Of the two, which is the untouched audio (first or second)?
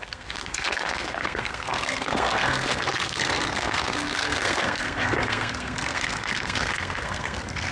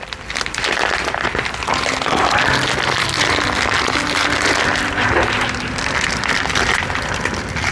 second